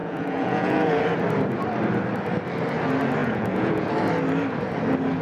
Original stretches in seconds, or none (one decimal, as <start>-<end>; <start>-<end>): 1.0-3.2; 3.9-5.2